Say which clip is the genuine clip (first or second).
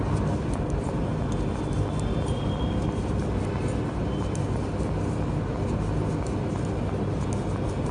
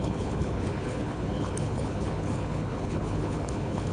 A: first